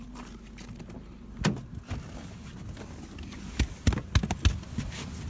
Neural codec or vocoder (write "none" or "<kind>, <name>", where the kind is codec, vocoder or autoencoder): none